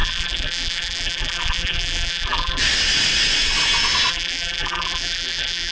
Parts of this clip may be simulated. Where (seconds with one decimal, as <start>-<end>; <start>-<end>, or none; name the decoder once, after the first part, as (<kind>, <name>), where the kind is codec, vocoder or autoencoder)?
0.0-2.6 (vocoder, BigVGAN v2); 4.1-5.7